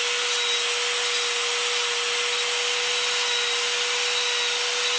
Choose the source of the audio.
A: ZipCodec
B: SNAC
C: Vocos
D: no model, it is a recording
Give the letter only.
D